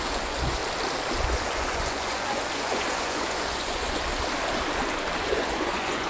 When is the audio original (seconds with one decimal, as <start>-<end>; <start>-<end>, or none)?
0.6-1.2; 4.1-5.2